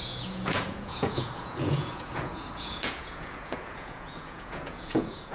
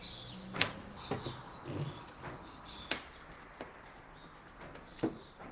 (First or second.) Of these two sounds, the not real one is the first